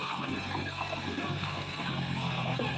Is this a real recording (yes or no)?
no